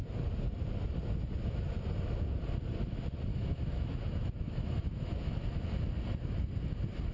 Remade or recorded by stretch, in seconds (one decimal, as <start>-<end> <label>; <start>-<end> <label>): 0.0-3.3 recorded; 3.3-5.3 remade; 5.3-7.1 recorded